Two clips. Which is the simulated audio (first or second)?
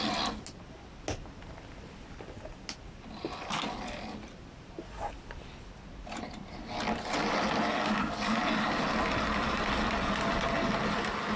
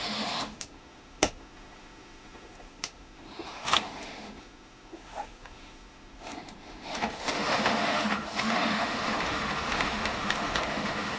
second